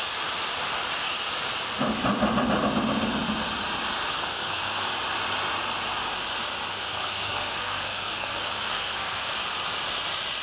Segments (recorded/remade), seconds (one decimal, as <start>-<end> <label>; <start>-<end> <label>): 0.0-4.1 recorded; 4.1-4.9 remade; 4.9-6.7 recorded; 6.7-9.3 remade; 9.3-10.4 recorded